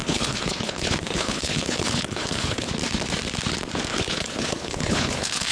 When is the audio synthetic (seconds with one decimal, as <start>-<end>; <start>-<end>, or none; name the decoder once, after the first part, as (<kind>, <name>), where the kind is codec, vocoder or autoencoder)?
0.0-2.7 (codec, HILCodec); 3.9-5.5